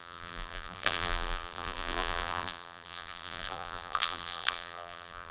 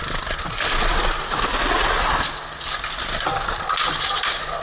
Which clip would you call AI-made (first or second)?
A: first